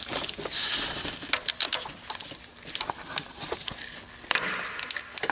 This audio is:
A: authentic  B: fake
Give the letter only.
A